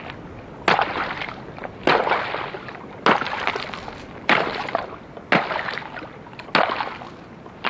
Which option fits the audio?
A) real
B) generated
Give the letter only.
A